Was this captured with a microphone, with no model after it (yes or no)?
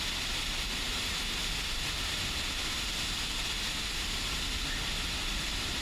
yes